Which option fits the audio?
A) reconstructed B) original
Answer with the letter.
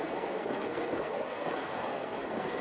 A